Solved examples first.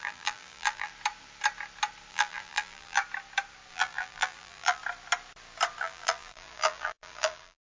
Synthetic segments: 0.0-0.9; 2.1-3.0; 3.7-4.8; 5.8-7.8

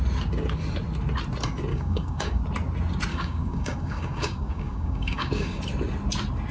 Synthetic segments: 1.7-2.4; 3.1-5.6

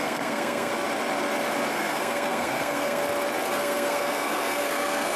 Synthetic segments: 0.0-0.7; 1.7-3.0; 3.5-5.2

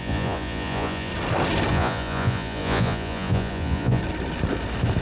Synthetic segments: 0.0-1.1; 1.7-4.0

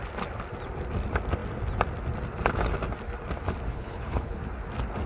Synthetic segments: 3.7-4.4